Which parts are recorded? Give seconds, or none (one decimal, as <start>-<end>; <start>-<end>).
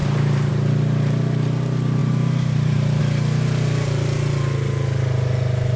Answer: 0.5-2.0; 3.0-5.8